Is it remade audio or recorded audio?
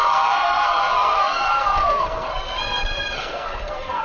remade